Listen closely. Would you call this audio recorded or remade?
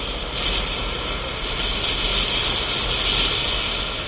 recorded